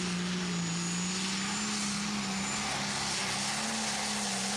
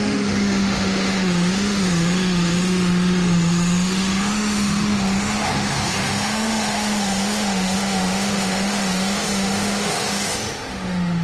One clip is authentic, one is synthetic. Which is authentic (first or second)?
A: first